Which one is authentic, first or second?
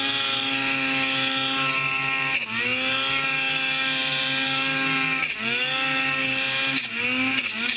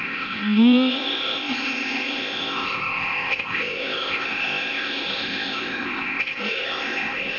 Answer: first